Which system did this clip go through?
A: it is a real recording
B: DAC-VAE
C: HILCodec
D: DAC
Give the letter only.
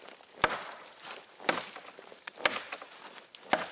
A